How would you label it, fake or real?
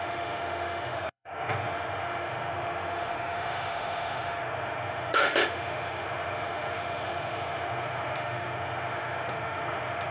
fake